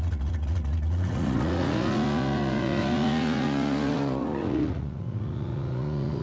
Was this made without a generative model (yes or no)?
no